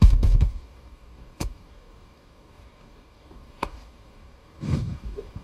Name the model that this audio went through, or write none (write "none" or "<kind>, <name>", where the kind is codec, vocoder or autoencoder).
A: codec, DAC